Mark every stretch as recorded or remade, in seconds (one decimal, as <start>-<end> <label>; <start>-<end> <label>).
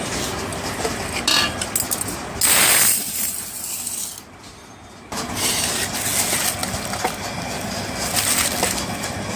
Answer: 0.0-9.4 recorded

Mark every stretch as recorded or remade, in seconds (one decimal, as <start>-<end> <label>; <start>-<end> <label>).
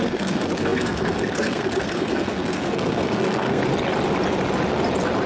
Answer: 0.0-3.6 remade; 3.6-5.3 recorded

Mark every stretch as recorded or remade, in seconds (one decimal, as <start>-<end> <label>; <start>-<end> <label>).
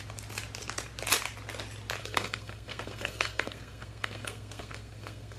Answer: 0.0-2.0 recorded; 2.0-5.4 remade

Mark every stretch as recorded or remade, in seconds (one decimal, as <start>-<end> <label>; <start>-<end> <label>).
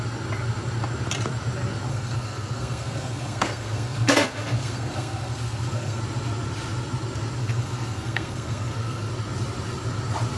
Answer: 0.0-1.9 recorded; 1.9-6.0 remade; 6.0-7.4 recorded; 7.4-9.1 remade; 9.1-10.4 recorded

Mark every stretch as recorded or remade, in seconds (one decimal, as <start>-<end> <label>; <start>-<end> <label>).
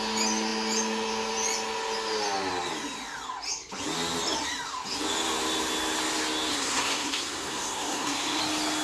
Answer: 0.0-6.5 recorded; 6.5-8.4 remade; 8.4-8.8 recorded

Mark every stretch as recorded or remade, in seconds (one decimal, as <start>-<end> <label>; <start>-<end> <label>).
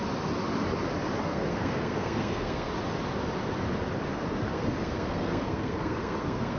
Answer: 0.0-1.2 recorded; 1.2-2.7 remade; 2.7-4.5 recorded; 4.5-6.6 remade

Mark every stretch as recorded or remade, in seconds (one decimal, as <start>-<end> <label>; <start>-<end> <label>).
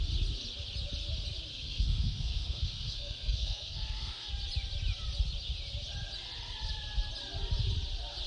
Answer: 0.0-1.5 recorded; 1.5-4.3 remade; 4.3-8.3 recorded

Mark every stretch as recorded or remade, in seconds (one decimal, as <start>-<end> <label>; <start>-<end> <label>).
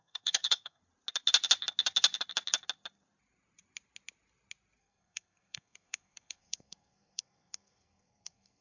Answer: 0.0-0.8 remade; 0.8-4.8 recorded; 4.8-8.6 remade